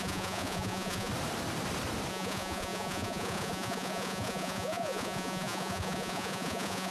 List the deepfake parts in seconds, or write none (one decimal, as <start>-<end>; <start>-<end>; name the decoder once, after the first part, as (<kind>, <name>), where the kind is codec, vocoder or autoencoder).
0.0-1.1 (vocoder, Vocos); 2.1-6.9